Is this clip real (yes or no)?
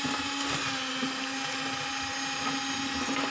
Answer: yes